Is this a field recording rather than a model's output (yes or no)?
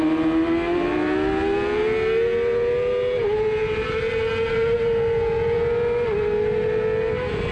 yes